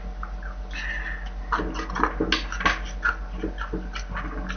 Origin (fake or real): real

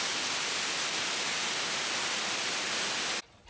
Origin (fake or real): real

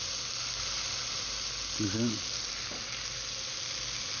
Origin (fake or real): real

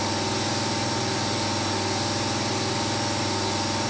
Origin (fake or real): real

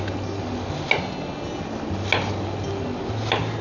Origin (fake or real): real